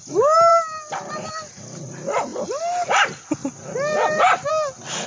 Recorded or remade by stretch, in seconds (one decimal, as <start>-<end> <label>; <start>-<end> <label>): 0.0-2.3 recorded; 2.3-4.5 remade; 4.5-5.1 recorded